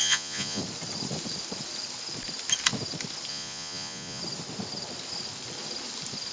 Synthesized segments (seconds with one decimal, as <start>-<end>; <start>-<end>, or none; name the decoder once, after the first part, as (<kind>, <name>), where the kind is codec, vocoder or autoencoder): 0.0-0.6 (vocoder, Vocos); 3.3-4.2